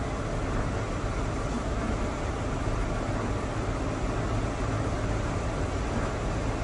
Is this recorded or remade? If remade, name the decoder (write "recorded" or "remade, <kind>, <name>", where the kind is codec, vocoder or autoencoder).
recorded